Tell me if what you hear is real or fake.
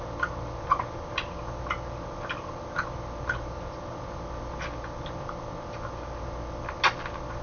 real